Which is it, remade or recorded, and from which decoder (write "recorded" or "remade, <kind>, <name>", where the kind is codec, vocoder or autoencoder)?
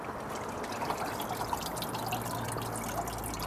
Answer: recorded